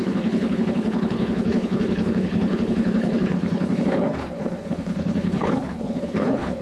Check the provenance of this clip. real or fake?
fake